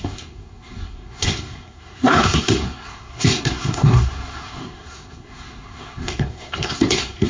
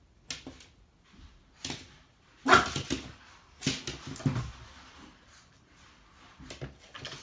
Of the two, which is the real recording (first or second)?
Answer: second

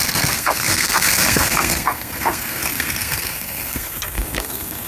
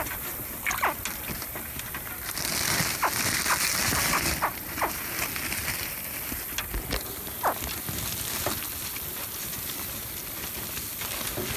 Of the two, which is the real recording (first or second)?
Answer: second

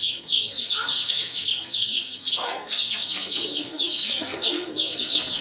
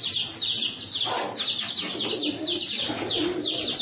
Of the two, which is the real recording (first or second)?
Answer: second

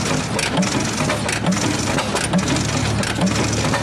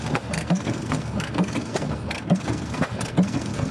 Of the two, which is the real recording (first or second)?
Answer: first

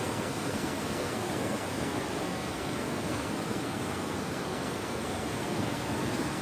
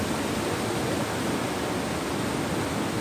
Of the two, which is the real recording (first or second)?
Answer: second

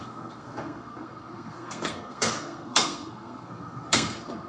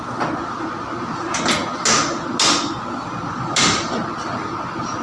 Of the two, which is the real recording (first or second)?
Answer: second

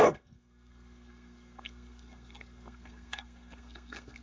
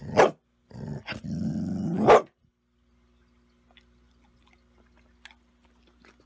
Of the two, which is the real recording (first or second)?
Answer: second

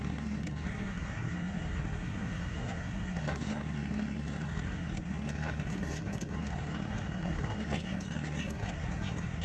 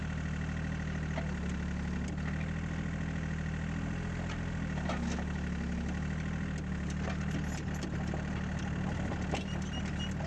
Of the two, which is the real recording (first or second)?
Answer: second